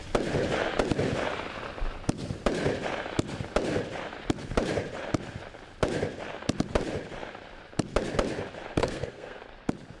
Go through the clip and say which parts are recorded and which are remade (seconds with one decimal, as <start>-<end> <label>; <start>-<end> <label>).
0.0-8.8 recorded; 8.8-9.4 remade; 9.4-10.0 recorded